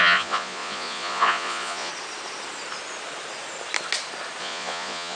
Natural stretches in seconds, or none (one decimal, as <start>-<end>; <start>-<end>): 1.9-4.4

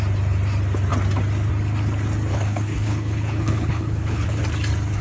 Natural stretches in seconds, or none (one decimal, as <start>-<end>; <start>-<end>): 0.0-2.3; 4.4-5.0

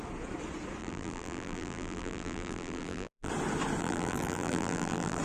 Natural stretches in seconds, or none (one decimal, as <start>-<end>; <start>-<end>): 0.0-0.8; 3.3-3.8